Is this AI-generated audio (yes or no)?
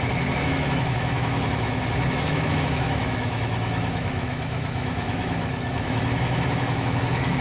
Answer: yes